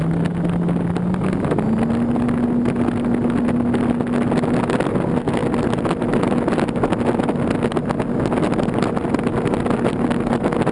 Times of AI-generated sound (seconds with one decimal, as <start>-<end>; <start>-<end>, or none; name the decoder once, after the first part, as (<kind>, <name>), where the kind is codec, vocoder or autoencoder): none